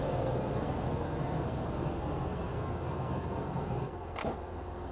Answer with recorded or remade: remade